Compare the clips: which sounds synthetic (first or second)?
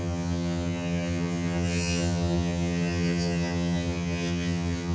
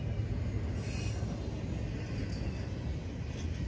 first